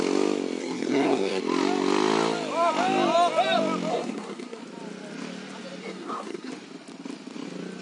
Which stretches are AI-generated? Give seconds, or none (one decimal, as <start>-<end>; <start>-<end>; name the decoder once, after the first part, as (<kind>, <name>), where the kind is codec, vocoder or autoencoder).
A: 0.6-1.4 (codec, SNAC); 3.9-4.6; 5.8-6.5